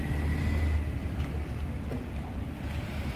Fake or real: real